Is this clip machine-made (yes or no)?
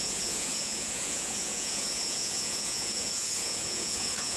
yes